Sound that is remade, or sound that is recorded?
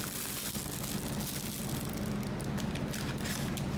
recorded